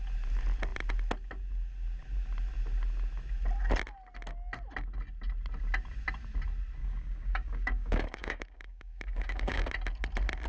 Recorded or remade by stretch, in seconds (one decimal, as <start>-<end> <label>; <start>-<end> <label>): 0.0-6.8 recorded; 6.8-9.7 remade; 9.7-10.5 recorded